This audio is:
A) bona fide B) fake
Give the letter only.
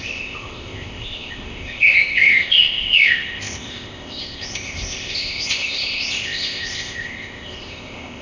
B